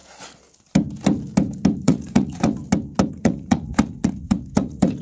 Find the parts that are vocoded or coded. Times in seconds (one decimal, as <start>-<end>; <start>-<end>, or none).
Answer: 1.8-2.6; 3.1-5.0